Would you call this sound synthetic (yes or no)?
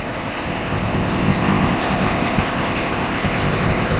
yes